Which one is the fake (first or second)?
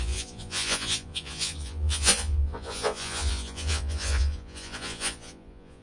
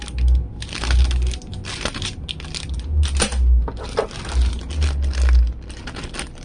first